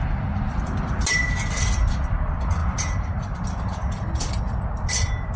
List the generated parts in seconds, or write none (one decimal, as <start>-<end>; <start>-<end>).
none